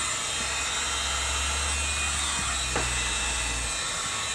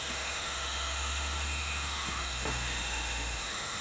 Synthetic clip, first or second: second